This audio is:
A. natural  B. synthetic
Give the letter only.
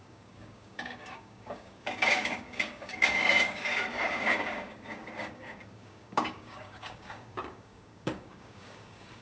B